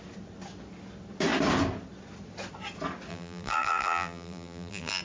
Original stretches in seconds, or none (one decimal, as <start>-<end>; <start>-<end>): 0.0-3.1